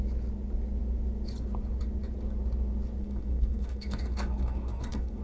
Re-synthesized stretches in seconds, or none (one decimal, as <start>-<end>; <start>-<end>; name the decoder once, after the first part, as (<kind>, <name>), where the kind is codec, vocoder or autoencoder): 3.0-5.2 (codec, SNAC)